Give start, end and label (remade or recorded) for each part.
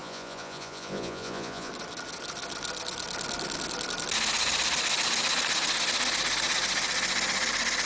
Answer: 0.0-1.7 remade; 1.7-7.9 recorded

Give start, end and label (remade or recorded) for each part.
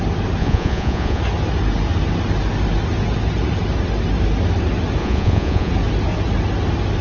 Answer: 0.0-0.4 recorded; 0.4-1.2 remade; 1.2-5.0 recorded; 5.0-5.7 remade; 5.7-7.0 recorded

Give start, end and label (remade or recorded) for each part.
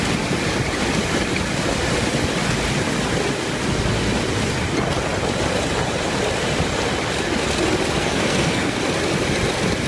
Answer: 0.0-8.0 recorded; 8.0-8.8 remade; 8.8-9.9 recorded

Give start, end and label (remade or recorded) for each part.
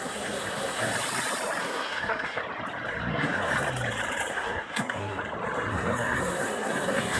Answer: 0.0-0.9 remade; 0.9-1.6 recorded; 1.6-2.4 remade; 2.4-3.1 recorded; 3.1-3.5 remade; 3.5-4.3 recorded; 4.3-5.2 remade; 5.2-5.7 recorded; 5.7-7.2 remade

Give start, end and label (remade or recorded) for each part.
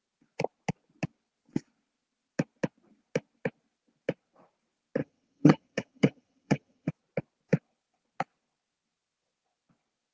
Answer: 0.0-5.0 recorded; 5.0-6.9 remade; 6.9-10.1 recorded